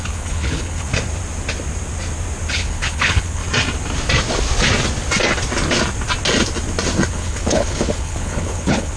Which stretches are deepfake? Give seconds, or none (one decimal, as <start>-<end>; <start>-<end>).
0.0-0.9; 2.5-3.4; 7.1-9.0